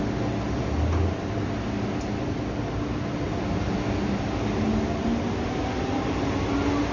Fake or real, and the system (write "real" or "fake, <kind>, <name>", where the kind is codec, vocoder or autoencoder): real